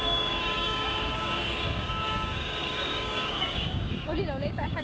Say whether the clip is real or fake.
fake